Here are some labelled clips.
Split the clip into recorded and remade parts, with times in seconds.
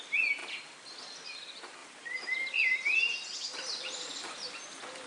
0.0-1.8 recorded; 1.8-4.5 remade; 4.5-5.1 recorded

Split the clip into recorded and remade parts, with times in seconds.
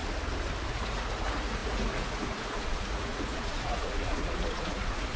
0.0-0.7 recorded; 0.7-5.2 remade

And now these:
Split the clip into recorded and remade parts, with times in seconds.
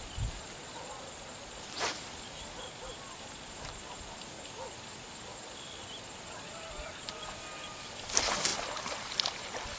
0.0-9.8 recorded